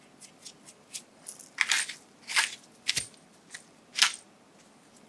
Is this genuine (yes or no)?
yes